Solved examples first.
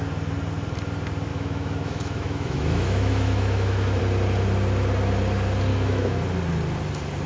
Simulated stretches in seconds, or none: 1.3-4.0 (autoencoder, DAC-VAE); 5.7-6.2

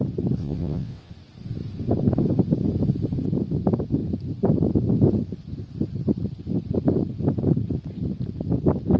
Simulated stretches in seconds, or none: 0.4-1.1 (vocoder, WaveNeXt)

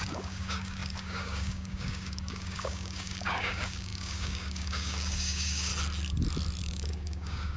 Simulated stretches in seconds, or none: 0.0-5.7 (codec, DAC); 6.6-7.6

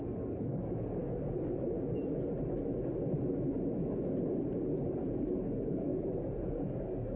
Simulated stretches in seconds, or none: 0.0-1.0 (codec, DAC); 5.3-5.9; 6.5-7.2

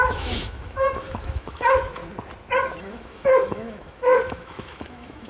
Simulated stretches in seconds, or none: 0.0-2.0 (autoencoder, DAC-VAE); 2.8-5.3

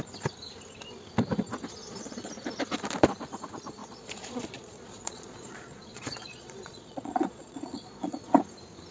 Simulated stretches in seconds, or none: 1.8-2.3 (vocoder, Vocos); 3.8-8.4